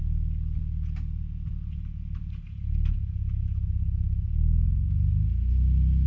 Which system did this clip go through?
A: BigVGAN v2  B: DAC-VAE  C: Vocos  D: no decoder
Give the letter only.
D